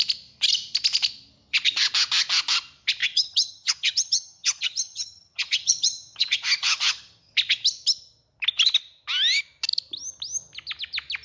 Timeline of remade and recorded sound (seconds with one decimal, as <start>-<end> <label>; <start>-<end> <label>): 0.0-3.0 recorded; 3.0-7.3 remade; 7.3-11.2 recorded